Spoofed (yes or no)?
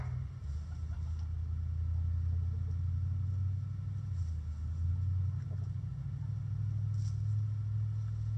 no